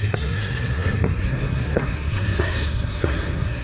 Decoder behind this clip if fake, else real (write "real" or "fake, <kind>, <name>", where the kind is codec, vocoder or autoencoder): fake, codec, SNAC